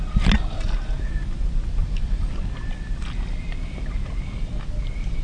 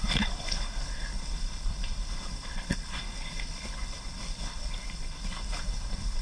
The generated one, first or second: second